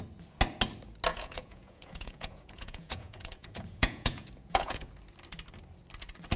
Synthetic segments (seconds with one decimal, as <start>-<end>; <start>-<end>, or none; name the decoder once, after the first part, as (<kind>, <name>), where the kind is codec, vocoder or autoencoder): 1.1-4.9 (vocoder, Vocos)